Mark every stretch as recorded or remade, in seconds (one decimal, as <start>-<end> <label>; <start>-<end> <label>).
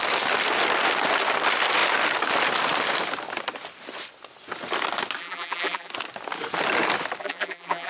0.0-5.2 recorded; 5.2-5.9 remade; 5.9-7.2 recorded; 7.2-7.9 remade